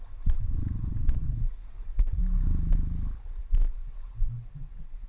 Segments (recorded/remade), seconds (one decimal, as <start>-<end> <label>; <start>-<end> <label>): 0.0-2.2 remade; 2.2-3.7 recorded; 3.7-5.1 remade